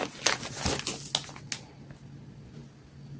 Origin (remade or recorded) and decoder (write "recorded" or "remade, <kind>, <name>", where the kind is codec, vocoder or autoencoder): recorded